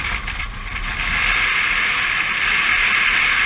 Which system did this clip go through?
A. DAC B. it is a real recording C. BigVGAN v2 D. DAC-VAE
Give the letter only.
C